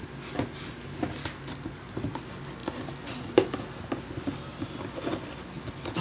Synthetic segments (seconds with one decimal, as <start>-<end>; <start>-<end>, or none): 1.2-1.9